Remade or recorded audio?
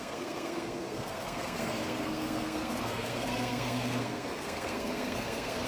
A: remade